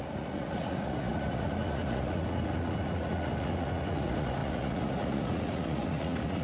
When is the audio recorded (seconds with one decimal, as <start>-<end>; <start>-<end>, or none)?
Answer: none